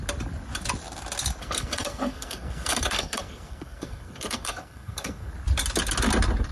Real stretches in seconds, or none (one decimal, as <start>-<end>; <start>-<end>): 0.0-1.4; 5.3-6.5